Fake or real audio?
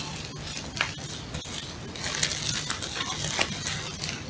real